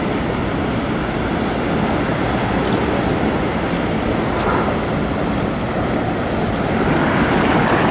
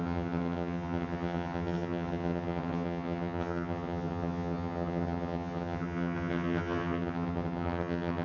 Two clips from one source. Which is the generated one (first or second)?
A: second